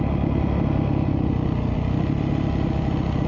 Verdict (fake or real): real